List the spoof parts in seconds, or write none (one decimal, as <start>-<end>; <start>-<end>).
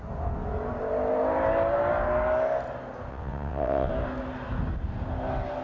3.1-3.9